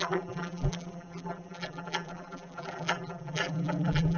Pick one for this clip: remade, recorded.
remade